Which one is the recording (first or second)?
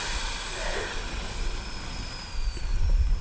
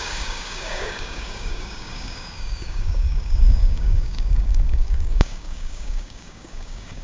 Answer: first